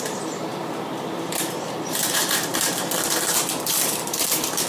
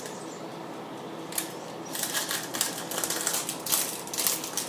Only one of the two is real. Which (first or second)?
second